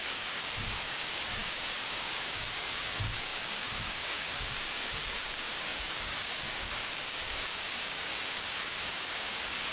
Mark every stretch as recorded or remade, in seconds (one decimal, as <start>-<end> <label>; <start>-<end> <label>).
0.0-9.7 remade